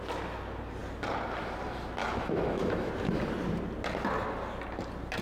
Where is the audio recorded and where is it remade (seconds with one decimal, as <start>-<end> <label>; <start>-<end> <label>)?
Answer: 0.0-2.0 recorded; 2.0-2.9 remade; 2.9-5.2 recorded